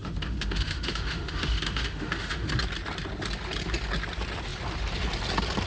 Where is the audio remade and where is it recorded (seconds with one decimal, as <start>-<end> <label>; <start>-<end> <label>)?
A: 0.0-2.5 remade; 2.5-5.7 recorded

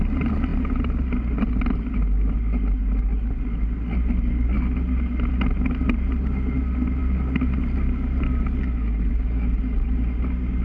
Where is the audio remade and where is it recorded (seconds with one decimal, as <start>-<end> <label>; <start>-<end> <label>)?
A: 0.0-10.6 recorded

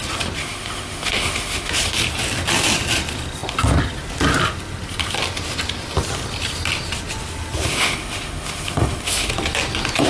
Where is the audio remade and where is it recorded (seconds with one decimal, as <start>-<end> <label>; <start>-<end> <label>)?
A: 0.0-0.4 recorded; 0.4-1.7 remade; 1.7-7.7 recorded; 7.7-9.3 remade; 9.3-10.1 recorded

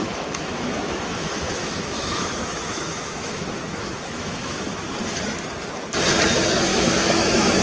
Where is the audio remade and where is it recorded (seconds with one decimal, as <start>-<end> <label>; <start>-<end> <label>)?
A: 0.0-4.6 remade; 4.6-6.7 recorded; 6.7-7.6 remade